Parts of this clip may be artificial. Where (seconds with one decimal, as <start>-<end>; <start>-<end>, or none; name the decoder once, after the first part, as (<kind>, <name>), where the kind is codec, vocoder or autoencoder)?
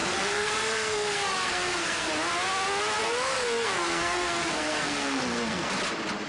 0.0-2.1 (codec, SNAC); 3.0-5.7